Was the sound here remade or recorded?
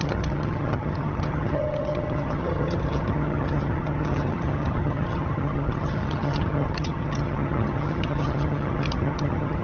remade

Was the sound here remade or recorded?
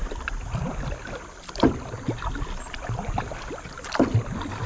recorded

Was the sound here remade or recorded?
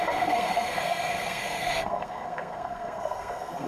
remade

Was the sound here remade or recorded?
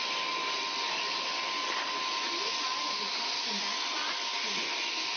recorded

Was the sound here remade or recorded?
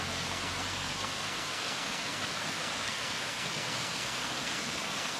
remade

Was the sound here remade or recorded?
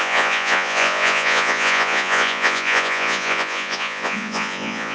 remade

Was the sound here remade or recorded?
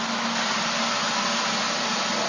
recorded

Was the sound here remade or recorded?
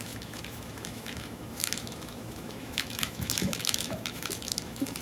remade